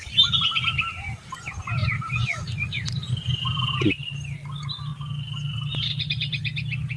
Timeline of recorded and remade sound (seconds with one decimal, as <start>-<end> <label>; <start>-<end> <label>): 0.0-1.8 recorded; 1.8-3.7 remade; 3.7-7.0 recorded